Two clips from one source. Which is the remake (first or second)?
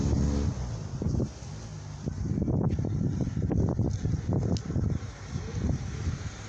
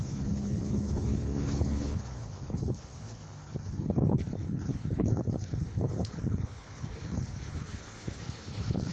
second